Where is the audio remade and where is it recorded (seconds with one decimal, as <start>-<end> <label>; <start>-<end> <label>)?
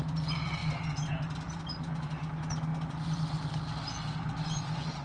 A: 0.0-5.0 recorded